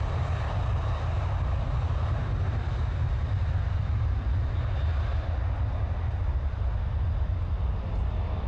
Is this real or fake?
real